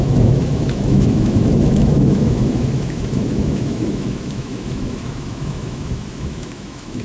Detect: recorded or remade remade